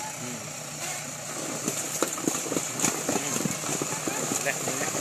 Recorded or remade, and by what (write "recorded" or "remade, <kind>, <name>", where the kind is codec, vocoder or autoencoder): recorded